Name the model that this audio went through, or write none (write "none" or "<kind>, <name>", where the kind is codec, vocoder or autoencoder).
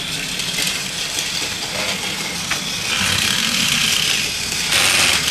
none